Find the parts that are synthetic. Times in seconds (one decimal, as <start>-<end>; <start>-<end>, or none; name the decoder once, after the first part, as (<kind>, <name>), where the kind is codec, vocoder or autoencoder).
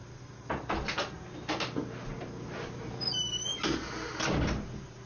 none